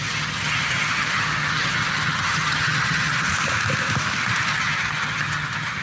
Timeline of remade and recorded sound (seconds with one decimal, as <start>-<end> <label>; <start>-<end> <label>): 0.0-3.3 remade; 3.3-4.5 recorded; 4.5-5.8 remade